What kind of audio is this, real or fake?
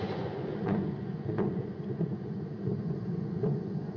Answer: fake